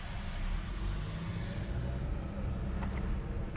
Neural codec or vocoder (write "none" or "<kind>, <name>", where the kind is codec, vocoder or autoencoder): none